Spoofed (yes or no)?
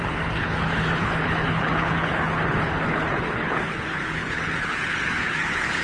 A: yes